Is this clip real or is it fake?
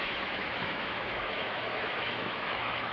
fake